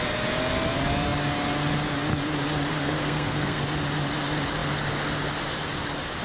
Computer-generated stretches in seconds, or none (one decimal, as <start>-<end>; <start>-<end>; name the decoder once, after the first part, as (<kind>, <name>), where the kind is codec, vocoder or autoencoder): 2.7-3.6 (codec, SNAC)